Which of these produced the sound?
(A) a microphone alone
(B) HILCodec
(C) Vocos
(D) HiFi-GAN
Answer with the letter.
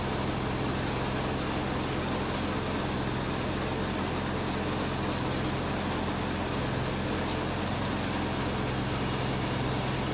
A